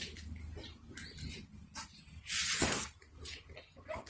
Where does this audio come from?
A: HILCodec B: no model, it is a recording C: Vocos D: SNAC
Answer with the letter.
B